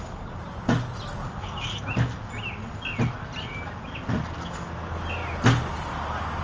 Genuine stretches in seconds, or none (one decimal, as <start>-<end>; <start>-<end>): 0.0-6.4

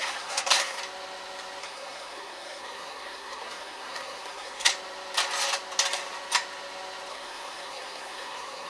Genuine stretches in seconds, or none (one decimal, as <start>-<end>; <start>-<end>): 0.8-1.6; 4.7-7.1

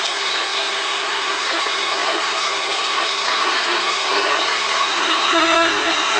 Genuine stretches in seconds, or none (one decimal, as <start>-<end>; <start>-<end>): none

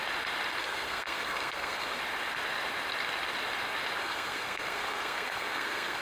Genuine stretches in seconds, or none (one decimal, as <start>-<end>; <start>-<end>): 0.0-0.6; 2.0-4.0

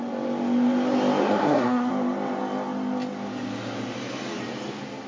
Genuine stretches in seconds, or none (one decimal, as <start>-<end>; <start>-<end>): 0.0-1.2; 1.9-5.1